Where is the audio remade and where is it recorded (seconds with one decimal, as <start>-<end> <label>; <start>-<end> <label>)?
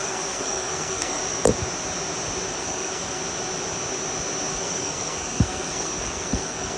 0.0-1.2 remade; 1.2-2.6 recorded; 2.6-3.2 remade; 3.2-4.5 recorded; 4.5-6.8 remade